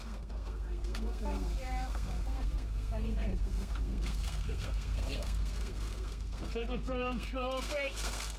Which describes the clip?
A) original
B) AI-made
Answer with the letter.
B